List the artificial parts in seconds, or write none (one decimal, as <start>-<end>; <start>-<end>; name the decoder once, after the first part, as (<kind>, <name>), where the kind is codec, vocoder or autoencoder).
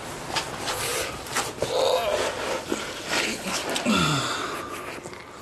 3.2-3.6 (codec, HILCodec)